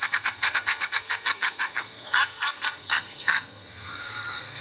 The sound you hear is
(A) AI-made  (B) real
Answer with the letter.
A